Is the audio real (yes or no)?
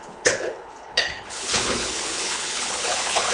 no